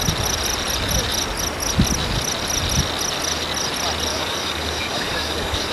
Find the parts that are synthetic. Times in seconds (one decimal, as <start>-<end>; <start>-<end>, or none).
4.1-5.7